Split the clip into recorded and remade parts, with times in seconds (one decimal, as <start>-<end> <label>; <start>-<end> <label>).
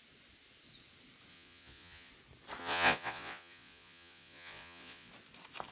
0.0-1.3 recorded; 1.3-2.1 remade; 2.1-2.6 recorded; 2.6-5.1 remade; 5.1-5.7 recorded